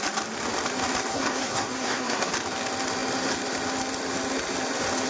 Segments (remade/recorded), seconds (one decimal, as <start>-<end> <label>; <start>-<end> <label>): 0.0-1.1 recorded; 1.1-2.3 remade; 2.3-5.1 recorded